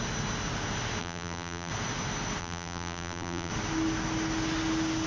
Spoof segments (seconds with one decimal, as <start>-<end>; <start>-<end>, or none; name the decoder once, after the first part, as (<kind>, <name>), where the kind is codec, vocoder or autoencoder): 1.0-1.7 (vocoder, BigVGAN v2); 2.4-3.5